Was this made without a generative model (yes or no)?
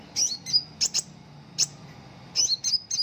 yes